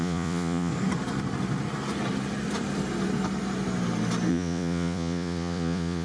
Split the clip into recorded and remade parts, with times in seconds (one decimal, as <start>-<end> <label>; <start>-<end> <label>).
0.0-0.7 remade; 0.7-4.3 recorded; 4.3-6.0 remade